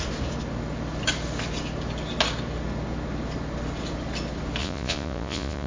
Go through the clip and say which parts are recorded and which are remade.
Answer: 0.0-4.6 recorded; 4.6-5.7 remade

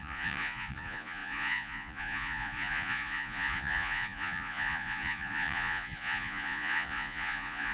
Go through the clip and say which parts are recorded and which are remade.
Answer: 0.0-7.7 remade